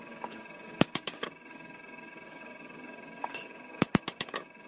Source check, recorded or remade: remade